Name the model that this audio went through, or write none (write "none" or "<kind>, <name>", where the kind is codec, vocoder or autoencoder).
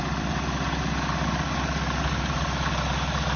none